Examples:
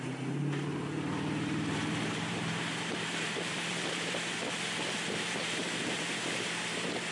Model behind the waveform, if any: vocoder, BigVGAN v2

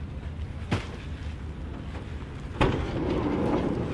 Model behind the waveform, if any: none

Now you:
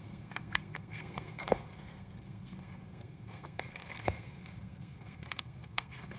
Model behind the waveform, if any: codec, SNAC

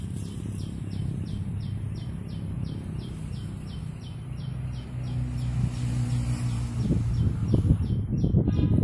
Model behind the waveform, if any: none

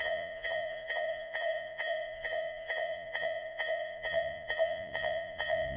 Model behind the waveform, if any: vocoder, Vocos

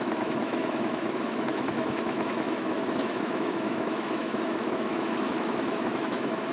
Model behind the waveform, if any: autoencoder, DAC-VAE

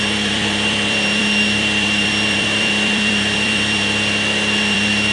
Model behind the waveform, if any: vocoder, BigVGAN v2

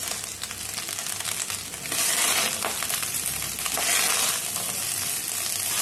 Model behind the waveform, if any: none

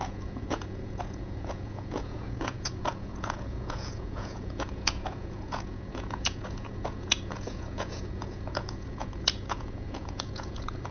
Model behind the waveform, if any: vocoder, Vocos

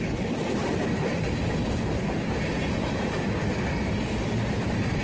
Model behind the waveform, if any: none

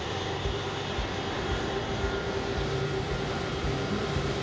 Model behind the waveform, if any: vocoder, BigVGAN v2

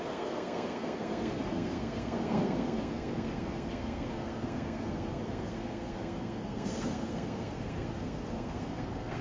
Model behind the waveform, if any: codec, SNAC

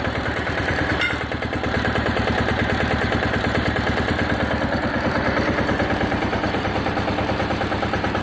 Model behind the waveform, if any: vocoder, BigVGAN v2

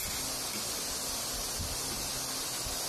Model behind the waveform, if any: none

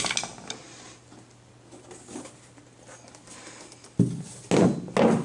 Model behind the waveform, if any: none